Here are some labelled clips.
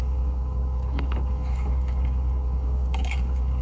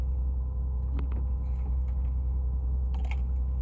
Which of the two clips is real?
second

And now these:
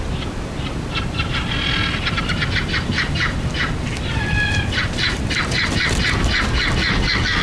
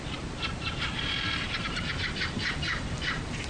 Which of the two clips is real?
first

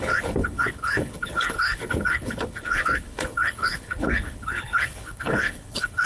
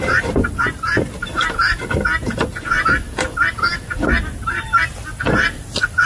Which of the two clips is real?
second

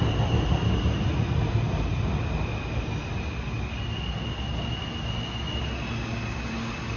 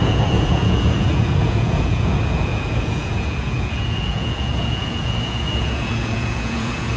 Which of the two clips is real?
first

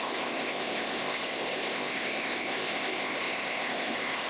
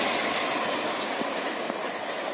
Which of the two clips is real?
second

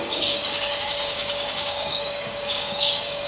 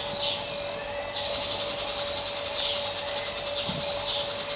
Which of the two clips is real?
second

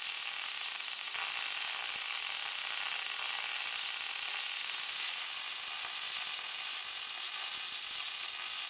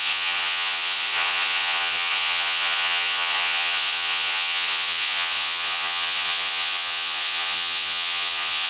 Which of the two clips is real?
first